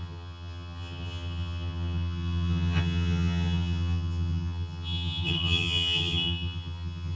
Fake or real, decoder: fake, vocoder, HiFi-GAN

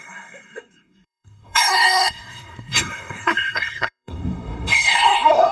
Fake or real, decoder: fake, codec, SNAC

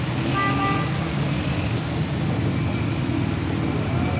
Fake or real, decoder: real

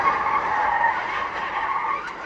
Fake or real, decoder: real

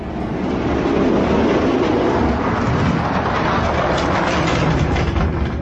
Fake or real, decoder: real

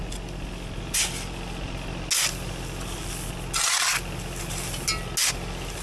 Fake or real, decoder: real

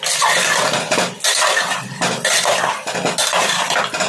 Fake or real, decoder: real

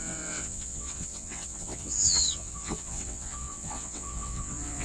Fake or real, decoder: fake, vocoder, WaveNeXt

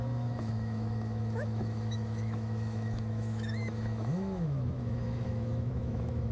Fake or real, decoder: fake, autoencoder, DAC-VAE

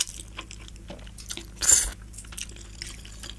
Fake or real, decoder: real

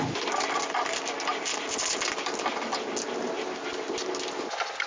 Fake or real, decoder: real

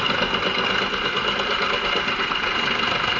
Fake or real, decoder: real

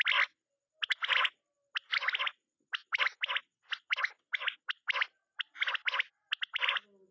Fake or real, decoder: real